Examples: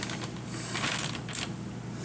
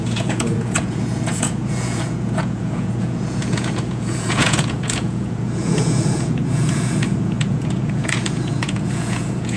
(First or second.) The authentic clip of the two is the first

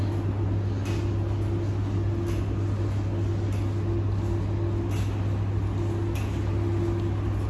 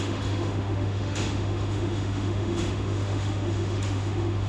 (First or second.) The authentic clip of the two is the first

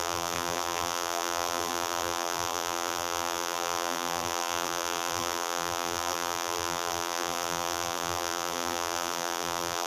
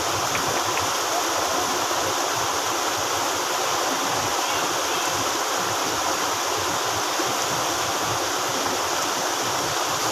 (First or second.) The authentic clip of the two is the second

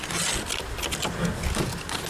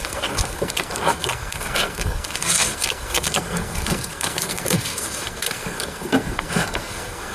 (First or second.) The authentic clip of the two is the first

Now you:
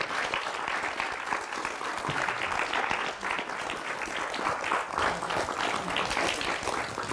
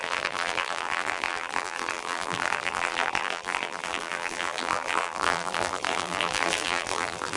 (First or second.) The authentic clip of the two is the first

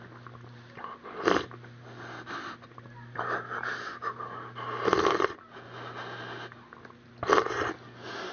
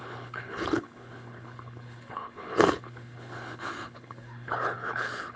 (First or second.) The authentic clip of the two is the first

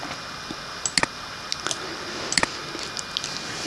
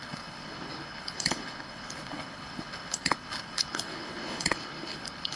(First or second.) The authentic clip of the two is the first